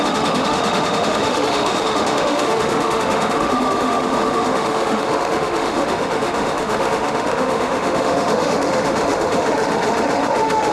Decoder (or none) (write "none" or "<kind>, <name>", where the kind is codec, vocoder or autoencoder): autoencoder, DAC-VAE